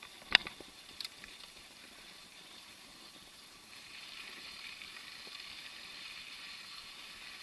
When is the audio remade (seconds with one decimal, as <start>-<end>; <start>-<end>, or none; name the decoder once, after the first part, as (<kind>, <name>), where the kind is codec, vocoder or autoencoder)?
0.4-4.8 (vocoder, BigVGAN v2); 5.7-6.9